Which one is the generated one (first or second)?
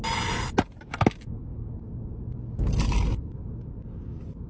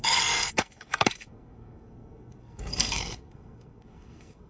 second